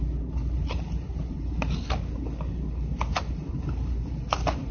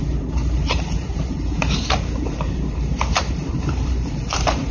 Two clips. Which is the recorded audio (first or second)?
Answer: first